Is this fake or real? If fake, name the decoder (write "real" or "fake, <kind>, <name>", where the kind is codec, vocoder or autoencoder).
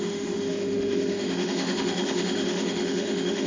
fake, autoencoder, DAC-VAE